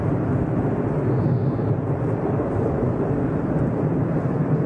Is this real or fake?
real